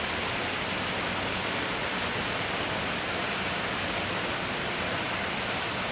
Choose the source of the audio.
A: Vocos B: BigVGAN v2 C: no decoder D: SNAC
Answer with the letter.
C